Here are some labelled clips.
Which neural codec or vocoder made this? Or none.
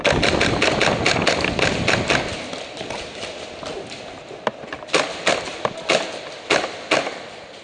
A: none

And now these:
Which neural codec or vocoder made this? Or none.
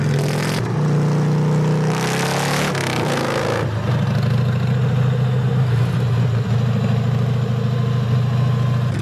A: none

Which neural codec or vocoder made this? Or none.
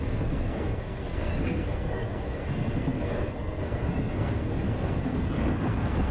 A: codec, SNAC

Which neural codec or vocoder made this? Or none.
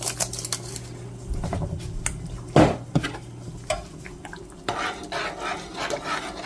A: none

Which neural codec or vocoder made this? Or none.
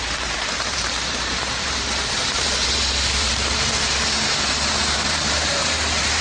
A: vocoder, BigVGAN v2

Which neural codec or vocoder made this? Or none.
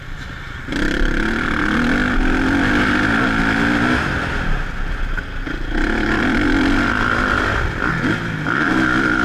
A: none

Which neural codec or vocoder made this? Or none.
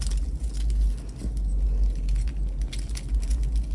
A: none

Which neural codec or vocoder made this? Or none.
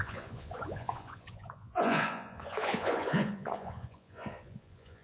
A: vocoder, Vocos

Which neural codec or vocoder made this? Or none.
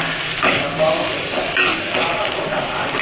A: none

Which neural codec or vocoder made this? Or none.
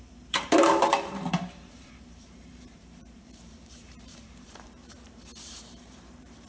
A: vocoder, BigVGAN v2